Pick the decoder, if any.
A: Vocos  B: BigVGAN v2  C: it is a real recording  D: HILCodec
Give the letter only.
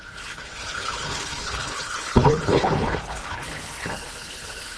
D